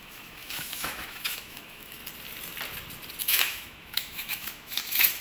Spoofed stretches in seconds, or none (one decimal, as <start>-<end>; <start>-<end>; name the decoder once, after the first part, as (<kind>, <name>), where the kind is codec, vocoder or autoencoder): 0.0-2.0 (autoencoder, DAC-VAE); 3.2-5.2